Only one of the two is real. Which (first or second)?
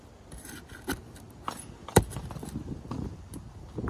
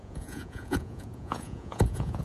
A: first